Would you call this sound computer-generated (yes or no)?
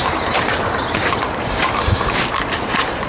yes